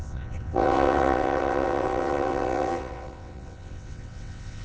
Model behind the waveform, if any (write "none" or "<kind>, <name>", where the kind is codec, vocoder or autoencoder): vocoder, WaveNeXt